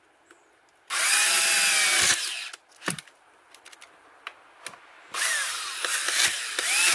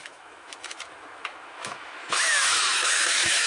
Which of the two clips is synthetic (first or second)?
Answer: second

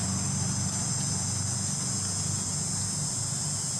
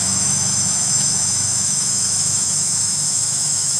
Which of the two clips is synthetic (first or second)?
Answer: second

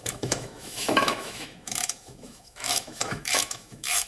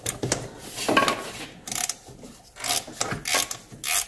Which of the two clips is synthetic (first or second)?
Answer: first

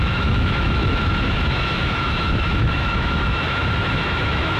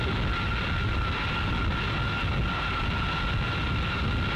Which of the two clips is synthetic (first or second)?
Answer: first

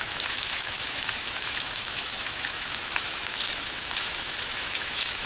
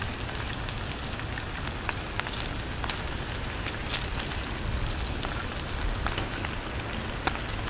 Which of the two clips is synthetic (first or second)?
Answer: first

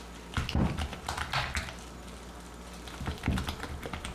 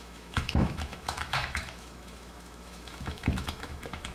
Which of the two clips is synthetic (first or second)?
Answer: second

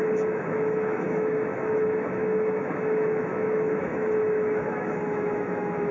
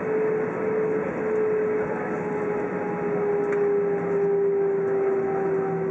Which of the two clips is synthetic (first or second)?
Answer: first